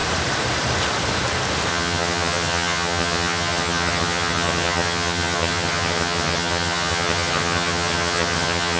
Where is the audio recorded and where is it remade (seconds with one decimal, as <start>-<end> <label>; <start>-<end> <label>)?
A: 0.0-1.7 recorded; 1.7-8.8 remade

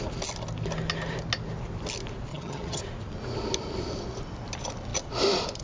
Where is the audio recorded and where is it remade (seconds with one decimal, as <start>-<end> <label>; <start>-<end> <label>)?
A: 0.0-2.3 recorded; 2.3-2.8 remade; 2.8-5.6 recorded

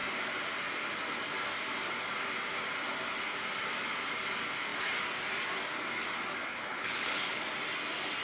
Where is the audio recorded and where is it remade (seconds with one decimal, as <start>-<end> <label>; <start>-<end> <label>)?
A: 0.0-6.5 recorded; 6.5-7.4 remade; 7.4-8.2 recorded

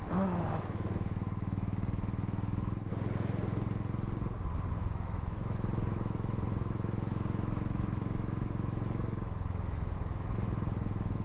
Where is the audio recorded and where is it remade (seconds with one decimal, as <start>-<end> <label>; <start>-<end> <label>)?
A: 0.0-2.9 remade; 2.9-4.7 recorded; 4.7-11.2 remade

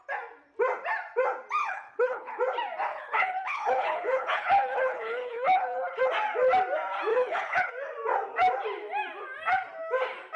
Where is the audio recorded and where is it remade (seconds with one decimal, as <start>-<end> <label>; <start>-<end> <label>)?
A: 0.0-1.6 recorded; 1.6-2.4 remade; 2.4-2.9 recorded; 2.9-6.0 remade; 6.0-7.1 recorded; 7.1-7.7 remade; 7.7-10.4 recorded

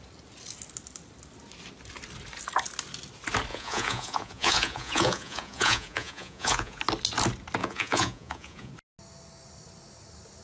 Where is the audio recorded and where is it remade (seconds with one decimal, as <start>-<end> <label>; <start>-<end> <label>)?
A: 0.0-3.5 recorded; 3.5-6.8 remade; 6.8-7.6 recorded; 7.6-8.7 remade; 8.7-10.4 recorded

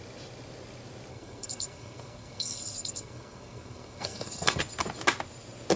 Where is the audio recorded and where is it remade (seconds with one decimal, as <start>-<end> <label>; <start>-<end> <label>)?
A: 0.0-1.1 recorded; 1.1-4.6 remade; 4.6-5.8 recorded